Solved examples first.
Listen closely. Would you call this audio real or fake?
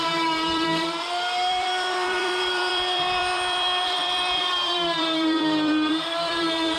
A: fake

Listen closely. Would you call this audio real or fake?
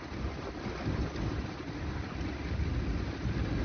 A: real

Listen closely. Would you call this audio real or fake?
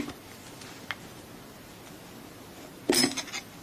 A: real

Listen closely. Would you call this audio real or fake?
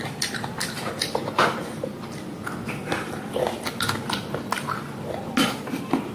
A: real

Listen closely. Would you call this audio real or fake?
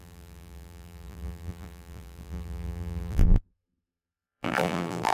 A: fake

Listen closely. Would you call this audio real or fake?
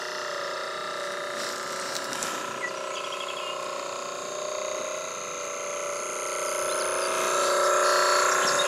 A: real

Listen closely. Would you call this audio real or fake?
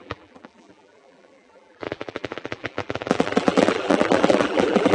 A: fake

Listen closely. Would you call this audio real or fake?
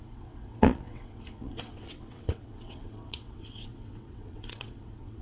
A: fake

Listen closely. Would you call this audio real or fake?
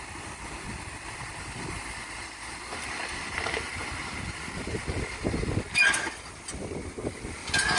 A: real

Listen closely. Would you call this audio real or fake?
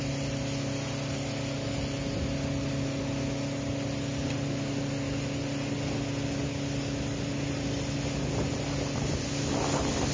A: real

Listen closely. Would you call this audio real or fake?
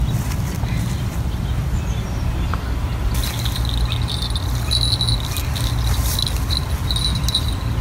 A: real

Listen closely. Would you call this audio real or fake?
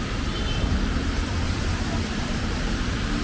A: fake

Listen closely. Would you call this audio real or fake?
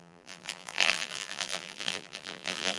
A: fake